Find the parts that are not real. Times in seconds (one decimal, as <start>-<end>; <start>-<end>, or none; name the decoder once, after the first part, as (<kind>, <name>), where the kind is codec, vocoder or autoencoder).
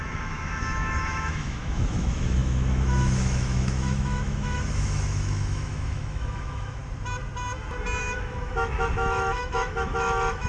0.0-6.8 (autoencoder, DAC-VAE); 8.0-10.5